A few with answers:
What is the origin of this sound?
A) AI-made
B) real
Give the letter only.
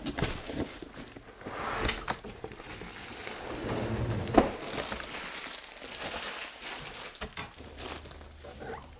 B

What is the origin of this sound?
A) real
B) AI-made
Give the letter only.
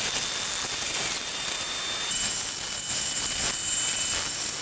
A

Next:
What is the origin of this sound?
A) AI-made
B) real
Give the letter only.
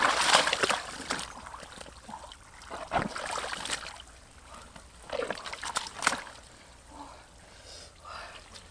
B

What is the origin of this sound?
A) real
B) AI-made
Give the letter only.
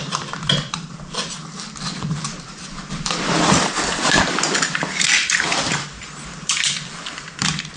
B